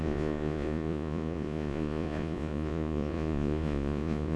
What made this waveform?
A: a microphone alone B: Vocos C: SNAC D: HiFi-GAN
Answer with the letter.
B